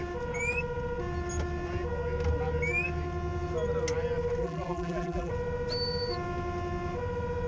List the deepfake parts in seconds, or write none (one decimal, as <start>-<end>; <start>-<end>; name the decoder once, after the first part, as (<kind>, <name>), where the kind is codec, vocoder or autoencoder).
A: 4.4-5.3 (vocoder, BigVGAN v2)